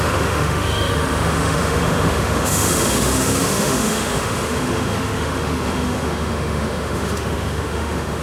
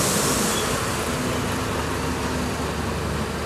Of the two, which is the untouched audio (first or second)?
second